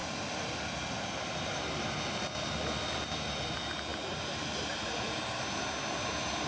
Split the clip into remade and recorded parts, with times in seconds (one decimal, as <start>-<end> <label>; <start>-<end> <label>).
0.0-6.5 recorded